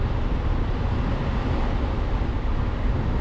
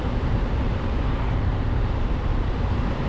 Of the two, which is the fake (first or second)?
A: second